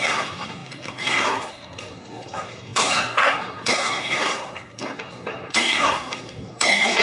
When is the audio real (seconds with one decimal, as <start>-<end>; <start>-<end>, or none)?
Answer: none